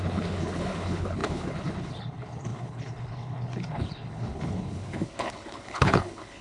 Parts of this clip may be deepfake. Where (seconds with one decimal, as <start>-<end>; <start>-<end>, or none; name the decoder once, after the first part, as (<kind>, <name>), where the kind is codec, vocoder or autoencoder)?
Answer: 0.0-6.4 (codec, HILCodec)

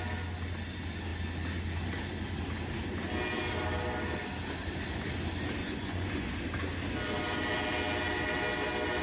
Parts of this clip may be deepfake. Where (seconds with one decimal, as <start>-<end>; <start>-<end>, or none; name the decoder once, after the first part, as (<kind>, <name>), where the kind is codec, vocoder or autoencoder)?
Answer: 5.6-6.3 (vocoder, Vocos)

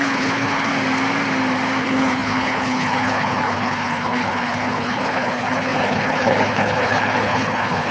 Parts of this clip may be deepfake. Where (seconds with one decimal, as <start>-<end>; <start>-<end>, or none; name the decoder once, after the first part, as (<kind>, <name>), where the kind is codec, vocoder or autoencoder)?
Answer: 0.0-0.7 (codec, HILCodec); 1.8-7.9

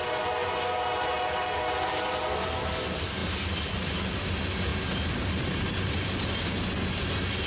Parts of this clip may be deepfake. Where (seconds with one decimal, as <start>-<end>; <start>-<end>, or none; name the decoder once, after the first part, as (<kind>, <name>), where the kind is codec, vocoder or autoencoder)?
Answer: none

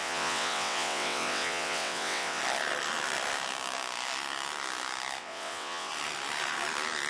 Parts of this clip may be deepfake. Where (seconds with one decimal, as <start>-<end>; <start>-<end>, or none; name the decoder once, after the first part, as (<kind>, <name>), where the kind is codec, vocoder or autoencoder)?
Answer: 0.0-2.4 (vocoder, WaveNeXt); 5.2-5.9

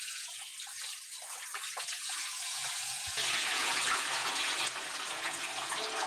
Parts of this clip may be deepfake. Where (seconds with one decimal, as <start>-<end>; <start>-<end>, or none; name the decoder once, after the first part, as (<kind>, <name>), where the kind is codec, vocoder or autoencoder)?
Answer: 0.0-0.5 (vocoder, Vocos); 1.8-6.1

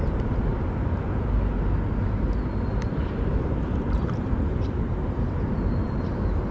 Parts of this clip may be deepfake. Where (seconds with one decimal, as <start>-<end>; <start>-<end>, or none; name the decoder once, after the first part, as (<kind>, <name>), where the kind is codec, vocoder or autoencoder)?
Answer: 2.7-5.3 (vocoder, BigVGAN v2)